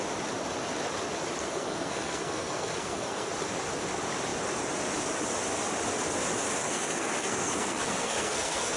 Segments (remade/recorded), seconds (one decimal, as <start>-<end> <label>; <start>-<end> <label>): 0.0-1.4 recorded; 1.4-3.3 remade; 3.3-6.6 recorded; 6.6-8.8 remade